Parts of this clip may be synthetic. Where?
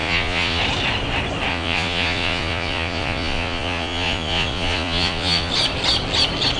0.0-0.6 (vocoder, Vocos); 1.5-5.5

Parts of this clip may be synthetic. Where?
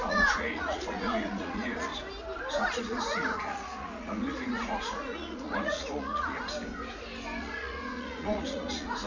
0.0-1.9 (vocoder, Vocos); 2.5-6.4; 7.4-9.1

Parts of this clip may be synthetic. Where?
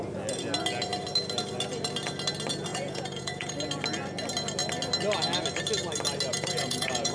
2.7-3.5 (vocoder, Vocos); 6.3-7.1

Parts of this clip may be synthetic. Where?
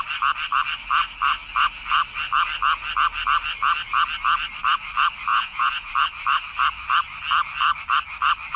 5.3-5.9 (vocoder, Vocos)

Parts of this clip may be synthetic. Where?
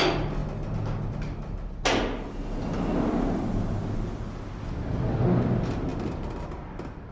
none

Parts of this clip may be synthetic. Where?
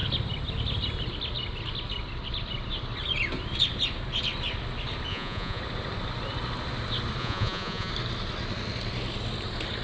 5.1-5.6 (vocoder, Vocos); 7.2-7.9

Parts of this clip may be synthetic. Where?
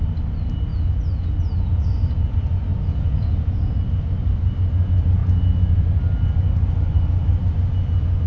0.7-1.9 (vocoder, Vocos); 2.7-3.6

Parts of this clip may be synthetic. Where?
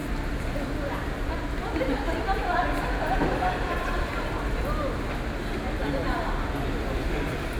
none